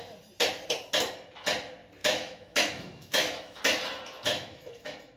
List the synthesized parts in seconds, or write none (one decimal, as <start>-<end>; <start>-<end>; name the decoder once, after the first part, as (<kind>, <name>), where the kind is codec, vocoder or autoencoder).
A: 2.0-3.6 (autoencoder, DAC-VAE); 4.3-5.2